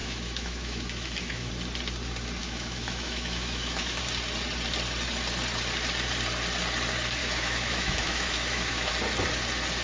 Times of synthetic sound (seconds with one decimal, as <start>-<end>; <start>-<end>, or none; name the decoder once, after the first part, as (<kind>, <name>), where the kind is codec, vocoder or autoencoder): 0.0-1.5 (autoencoder, DAC-VAE); 2.4-4.0; 7.2-8.9